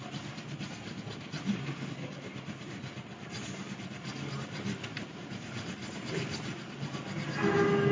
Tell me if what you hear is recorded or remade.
recorded